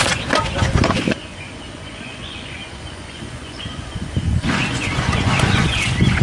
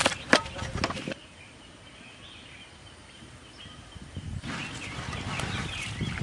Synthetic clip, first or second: first